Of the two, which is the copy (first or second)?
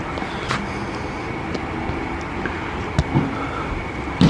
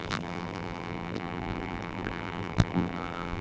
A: second